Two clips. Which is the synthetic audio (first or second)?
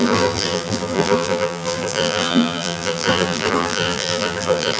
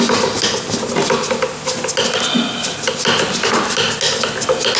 first